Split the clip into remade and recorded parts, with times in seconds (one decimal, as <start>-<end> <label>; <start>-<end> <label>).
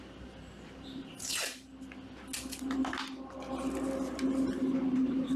0.0-1.7 remade; 1.7-4.9 recorded; 4.9-5.4 remade